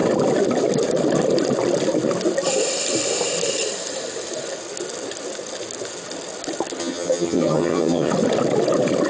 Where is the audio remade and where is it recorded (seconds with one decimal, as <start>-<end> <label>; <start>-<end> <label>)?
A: 0.0-6.8 recorded; 6.8-8.1 remade; 8.1-9.1 recorded